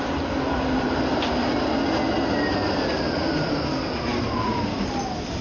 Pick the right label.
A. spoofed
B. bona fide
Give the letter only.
B